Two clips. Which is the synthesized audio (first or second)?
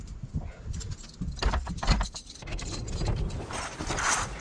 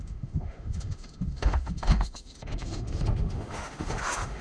second